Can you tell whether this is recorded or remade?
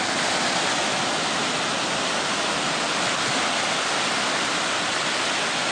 recorded